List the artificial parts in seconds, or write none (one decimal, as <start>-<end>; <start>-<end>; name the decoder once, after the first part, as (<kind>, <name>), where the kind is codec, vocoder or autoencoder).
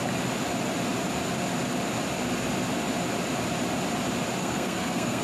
4.4-5.2 (codec, SNAC)